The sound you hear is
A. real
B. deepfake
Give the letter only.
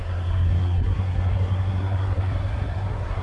B